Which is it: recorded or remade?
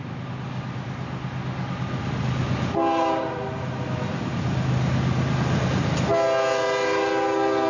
recorded